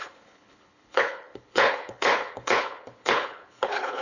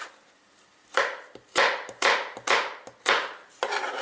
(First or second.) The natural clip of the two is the second